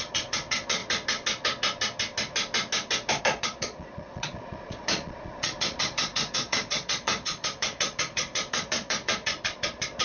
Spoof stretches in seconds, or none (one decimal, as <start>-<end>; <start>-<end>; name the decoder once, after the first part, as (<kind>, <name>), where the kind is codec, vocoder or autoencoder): 0.0-0.8 (vocoder, Vocos); 3.2-10.0